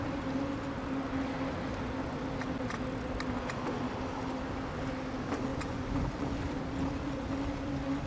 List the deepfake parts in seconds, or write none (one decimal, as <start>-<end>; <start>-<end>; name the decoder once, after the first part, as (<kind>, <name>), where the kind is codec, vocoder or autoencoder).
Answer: 5.5-6.3 (vocoder, Vocos)